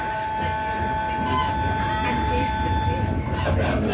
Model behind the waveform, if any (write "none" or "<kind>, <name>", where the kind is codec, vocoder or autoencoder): none